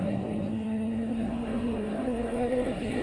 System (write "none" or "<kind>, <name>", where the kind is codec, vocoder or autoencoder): codec, SNAC